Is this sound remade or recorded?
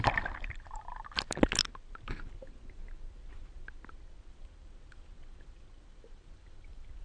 recorded